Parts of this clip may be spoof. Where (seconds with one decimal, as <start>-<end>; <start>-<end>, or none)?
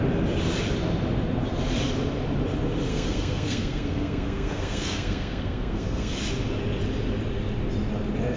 2.9-6.1